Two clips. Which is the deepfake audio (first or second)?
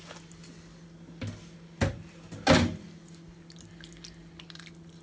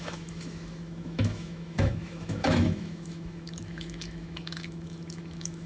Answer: second